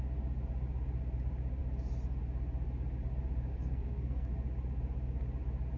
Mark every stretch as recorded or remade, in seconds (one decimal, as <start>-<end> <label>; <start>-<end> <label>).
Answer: 0.0-3.5 recorded; 3.5-4.3 remade; 4.3-5.8 recorded